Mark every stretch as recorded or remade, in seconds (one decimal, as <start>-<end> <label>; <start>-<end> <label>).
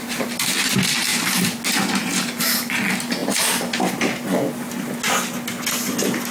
0.0-6.3 recorded